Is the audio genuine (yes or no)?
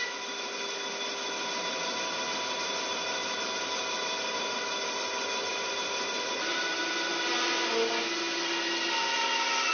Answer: yes